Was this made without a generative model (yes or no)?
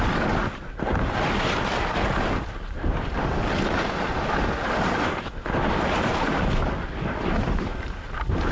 yes